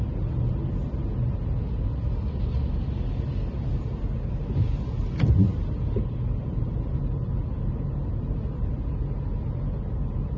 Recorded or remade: recorded